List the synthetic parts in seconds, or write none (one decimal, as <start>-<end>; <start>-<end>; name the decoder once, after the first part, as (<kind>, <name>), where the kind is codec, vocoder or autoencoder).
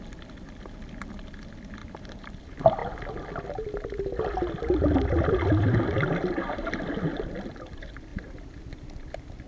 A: 1.8-2.3 (vocoder, BigVGAN v2)